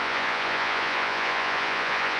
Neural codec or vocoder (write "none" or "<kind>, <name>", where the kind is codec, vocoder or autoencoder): vocoder, Vocos